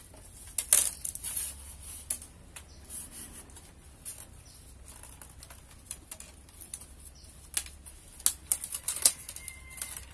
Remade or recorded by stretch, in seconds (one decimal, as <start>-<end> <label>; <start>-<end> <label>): 0.0-10.1 recorded